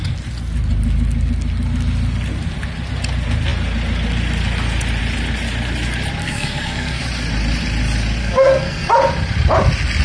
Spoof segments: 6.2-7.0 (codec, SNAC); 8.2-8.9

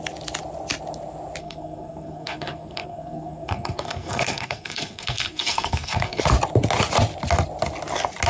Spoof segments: 1.4-6.2 (codec, SNAC)

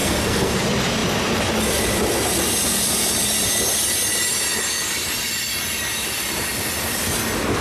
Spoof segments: 0.0-0.6 (codec, SNAC)

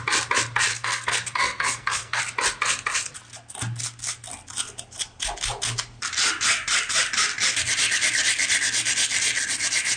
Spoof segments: 0.7-2.2 (codec, SNAC)

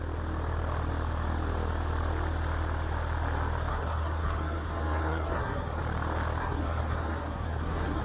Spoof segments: 3.7-5.8 (codec, SNAC); 6.4-8.0

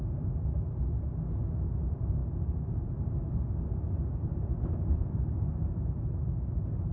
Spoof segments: none